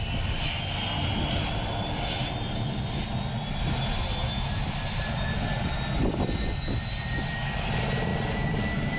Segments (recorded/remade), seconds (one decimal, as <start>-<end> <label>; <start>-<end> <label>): 0.0-9.0 recorded